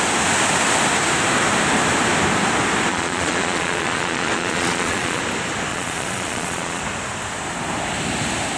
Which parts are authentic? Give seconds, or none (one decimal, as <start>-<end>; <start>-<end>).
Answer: 0.0-2.9; 5.2-5.7; 6.8-8.6